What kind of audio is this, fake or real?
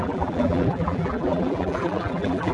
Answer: fake